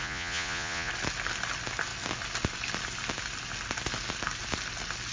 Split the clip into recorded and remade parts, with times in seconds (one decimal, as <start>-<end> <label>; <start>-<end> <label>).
0.0-0.9 remade; 0.9-5.1 recorded

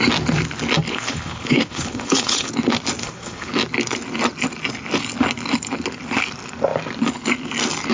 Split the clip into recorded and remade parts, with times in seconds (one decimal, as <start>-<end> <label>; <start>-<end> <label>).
0.0-0.9 recorded; 0.9-2.5 remade; 2.5-3.0 recorded; 3.0-3.5 remade; 3.5-7.9 recorded

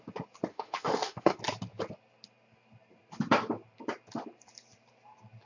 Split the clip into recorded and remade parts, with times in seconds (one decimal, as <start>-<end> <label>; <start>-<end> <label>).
0.0-0.5 recorded; 0.5-1.4 remade; 1.4-5.5 recorded

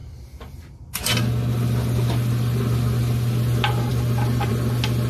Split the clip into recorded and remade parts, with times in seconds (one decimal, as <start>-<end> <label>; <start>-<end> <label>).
0.0-5.1 recorded

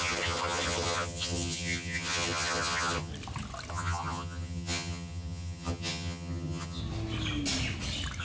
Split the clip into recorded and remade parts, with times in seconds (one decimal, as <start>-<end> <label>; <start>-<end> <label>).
0.0-3.1 remade; 3.1-3.7 recorded; 3.7-6.8 remade; 6.8-8.2 recorded